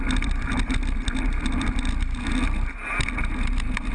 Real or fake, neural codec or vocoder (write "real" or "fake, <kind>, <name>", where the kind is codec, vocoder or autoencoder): real